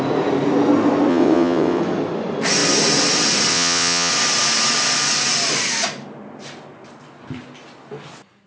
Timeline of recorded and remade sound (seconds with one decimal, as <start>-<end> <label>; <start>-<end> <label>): 0.0-1.1 recorded; 1.1-1.8 remade; 1.8-3.5 recorded; 3.5-4.1 remade; 4.1-8.5 recorded